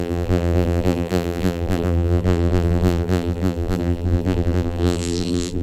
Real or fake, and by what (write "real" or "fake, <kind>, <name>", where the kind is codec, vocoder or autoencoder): fake, vocoder, BigVGAN v2